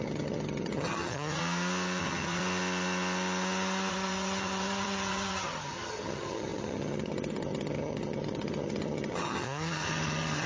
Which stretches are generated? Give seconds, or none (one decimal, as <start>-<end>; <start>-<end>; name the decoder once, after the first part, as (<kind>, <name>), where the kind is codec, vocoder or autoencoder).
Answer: 0.0-1.4 (vocoder, HiFi-GAN); 2.0-2.4; 3.9-10.5